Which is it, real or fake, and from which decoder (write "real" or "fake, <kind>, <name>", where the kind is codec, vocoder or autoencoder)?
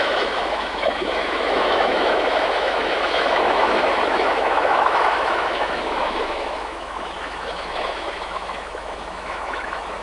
fake, autoencoder, DAC-VAE